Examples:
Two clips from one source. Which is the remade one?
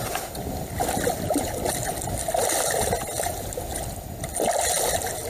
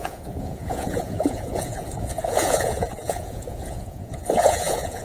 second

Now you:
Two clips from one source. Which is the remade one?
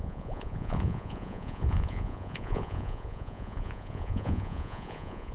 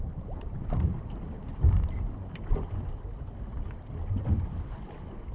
first